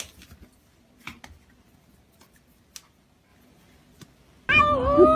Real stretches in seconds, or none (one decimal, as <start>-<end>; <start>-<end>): 0.0-5.2